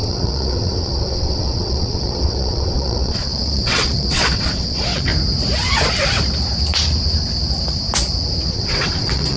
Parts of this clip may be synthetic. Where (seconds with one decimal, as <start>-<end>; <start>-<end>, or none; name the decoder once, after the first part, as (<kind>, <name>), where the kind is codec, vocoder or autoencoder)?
0.0-5.1 (vocoder, WaveNeXt); 8.5-9.4